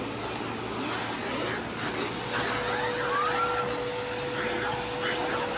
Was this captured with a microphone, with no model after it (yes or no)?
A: yes